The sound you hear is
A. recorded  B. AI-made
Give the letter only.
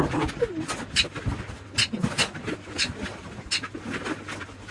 A